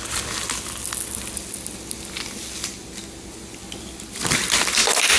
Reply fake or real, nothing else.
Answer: real